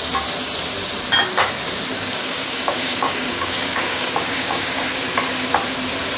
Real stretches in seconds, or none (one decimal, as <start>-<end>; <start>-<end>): 0.0-1.9; 5.0-6.2